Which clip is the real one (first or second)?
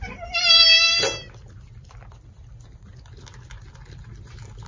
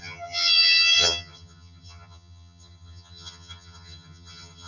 first